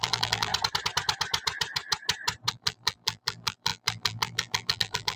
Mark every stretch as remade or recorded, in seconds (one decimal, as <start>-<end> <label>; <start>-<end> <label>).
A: 0.0-0.5 remade; 0.5-2.5 recorded; 2.5-5.2 remade